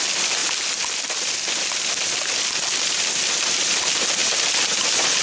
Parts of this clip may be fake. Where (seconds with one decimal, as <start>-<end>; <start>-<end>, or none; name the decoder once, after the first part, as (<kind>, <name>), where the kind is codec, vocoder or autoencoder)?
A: none